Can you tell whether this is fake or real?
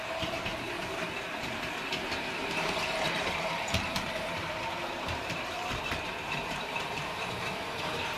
fake